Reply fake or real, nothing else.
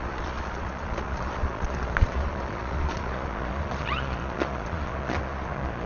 fake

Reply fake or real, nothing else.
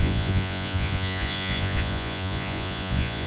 fake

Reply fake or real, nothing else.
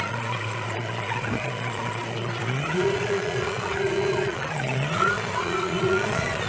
fake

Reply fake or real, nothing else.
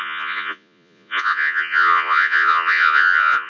fake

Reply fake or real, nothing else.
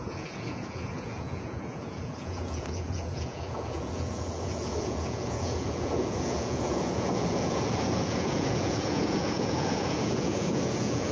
fake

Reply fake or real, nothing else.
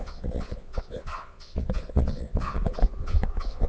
fake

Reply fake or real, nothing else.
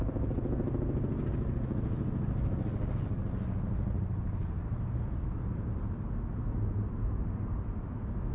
real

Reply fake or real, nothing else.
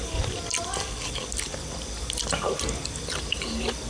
real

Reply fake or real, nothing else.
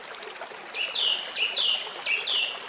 real